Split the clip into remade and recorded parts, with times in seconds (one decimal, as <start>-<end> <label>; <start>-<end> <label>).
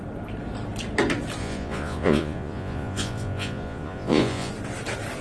0.0-1.4 recorded; 1.4-4.5 remade; 4.5-5.2 recorded